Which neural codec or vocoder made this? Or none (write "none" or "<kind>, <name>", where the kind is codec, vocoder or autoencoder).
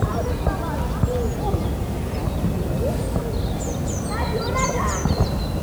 none